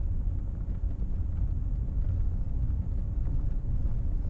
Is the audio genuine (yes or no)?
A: yes